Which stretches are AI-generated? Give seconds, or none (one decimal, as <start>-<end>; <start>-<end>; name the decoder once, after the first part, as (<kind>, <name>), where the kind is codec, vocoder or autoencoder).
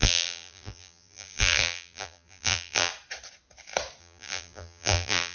0.0-2.9 (vocoder, BigVGAN v2); 4.0-5.3